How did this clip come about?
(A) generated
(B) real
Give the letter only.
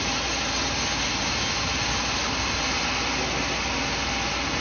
B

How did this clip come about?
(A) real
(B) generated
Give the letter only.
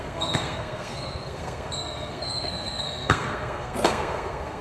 B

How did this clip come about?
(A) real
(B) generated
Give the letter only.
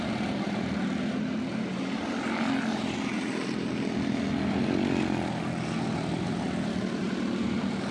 A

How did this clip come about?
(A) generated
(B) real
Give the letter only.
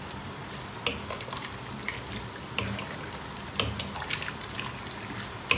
B